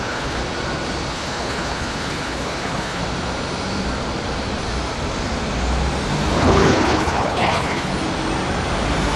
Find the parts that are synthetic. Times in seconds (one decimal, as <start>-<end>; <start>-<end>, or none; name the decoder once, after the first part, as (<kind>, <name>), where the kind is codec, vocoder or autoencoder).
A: 0.0-0.4 (codec, HILCodec); 1.1-3.0; 6.4-7.9